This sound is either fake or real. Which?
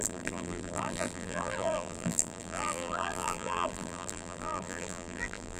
fake